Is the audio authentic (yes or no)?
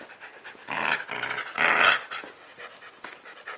yes